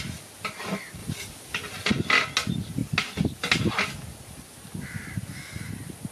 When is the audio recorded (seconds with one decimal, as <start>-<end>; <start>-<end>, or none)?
0.0-1.0; 1.9-6.1